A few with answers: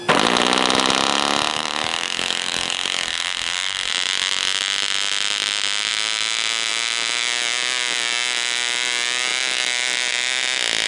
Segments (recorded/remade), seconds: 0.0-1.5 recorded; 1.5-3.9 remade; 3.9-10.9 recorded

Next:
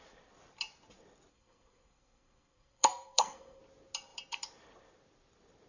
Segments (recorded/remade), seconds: 0.0-1.3 recorded; 1.3-3.6 remade; 3.6-5.7 recorded

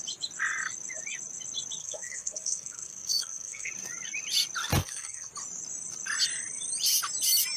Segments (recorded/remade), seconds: 0.0-1.8 recorded; 1.8-3.7 remade; 3.7-4.8 recorded; 4.8-5.3 remade; 5.3-7.6 recorded